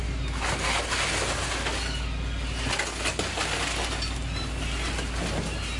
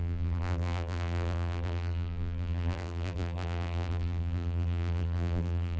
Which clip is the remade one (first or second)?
second